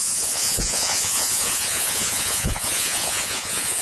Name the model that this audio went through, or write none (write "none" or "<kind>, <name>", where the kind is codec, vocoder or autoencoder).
vocoder, Vocos